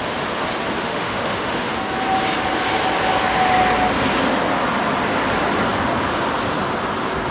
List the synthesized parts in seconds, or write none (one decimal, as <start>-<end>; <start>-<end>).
0.8-1.7